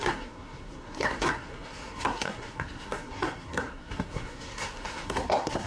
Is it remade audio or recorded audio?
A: remade